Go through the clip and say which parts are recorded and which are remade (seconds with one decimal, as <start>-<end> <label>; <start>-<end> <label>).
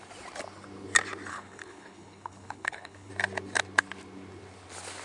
0.0-1.3 recorded; 1.3-3.1 remade; 3.1-5.0 recorded